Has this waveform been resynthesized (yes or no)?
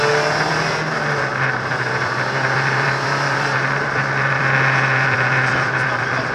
yes